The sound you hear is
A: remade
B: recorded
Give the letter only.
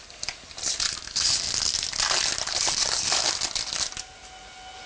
B